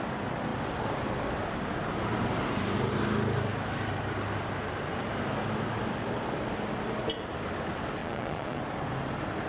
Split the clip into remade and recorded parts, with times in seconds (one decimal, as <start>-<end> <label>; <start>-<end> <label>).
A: 0.0-8.0 recorded; 8.0-8.6 remade; 8.6-9.5 recorded